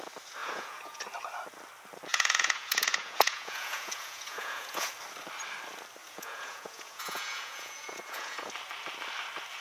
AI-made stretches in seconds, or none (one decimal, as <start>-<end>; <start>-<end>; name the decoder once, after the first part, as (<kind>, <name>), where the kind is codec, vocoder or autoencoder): 0.4-1.0 (vocoder, Vocos); 2.1-4.9; 6.0-8.5